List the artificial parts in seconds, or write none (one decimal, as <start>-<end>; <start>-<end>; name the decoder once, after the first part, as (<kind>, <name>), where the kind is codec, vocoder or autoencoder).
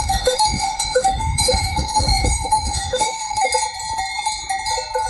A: 0.0-3.5 (autoencoder, DAC-VAE)